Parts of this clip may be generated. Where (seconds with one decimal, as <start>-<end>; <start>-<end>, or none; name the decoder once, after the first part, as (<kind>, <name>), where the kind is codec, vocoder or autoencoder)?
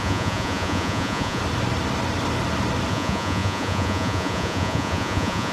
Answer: 0.0-1.4 (vocoder, Vocos); 2.9-5.5